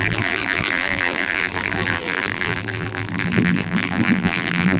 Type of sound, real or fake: fake